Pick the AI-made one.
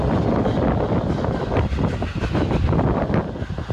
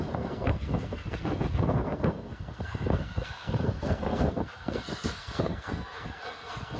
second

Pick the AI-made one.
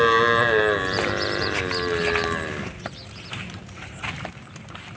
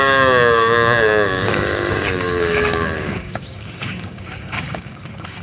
second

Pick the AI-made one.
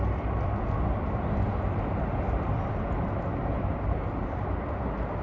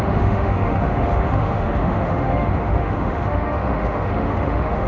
second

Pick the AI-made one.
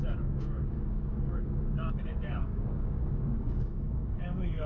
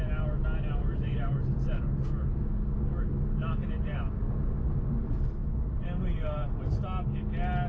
first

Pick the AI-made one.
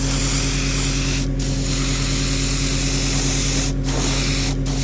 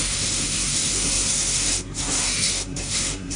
second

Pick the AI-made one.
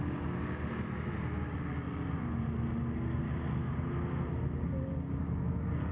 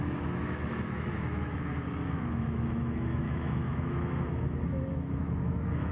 second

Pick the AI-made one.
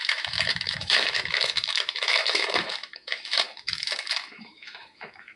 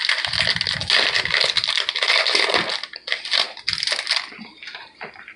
first